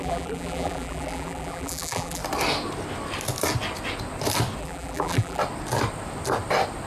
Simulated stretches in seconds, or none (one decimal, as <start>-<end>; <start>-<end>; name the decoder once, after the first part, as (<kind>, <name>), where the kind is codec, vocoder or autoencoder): 0.0-2.2 (vocoder, BigVGAN v2); 4.6-5.4